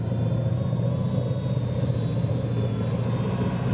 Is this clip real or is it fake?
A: real